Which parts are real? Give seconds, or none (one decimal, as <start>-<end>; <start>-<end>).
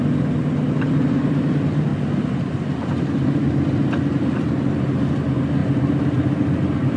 0.0-7.0